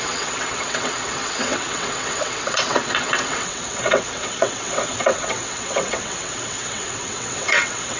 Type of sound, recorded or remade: remade